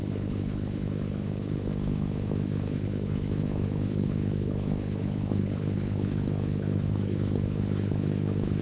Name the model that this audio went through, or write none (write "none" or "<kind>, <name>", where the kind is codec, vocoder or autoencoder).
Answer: codec, HILCodec